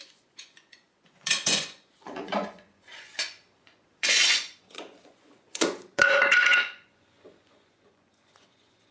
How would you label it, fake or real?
fake